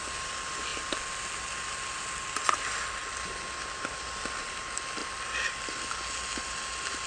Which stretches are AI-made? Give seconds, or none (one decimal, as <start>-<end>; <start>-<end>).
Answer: none